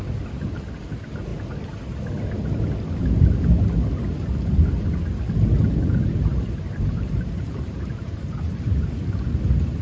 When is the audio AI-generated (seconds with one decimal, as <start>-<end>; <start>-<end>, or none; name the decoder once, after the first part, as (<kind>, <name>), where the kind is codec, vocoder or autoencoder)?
6.3-8.6 (vocoder, BigVGAN v2)